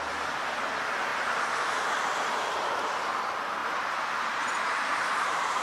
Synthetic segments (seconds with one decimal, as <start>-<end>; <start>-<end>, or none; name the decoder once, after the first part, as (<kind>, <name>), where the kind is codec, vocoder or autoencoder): 3.6-5.6 (vocoder, BigVGAN v2)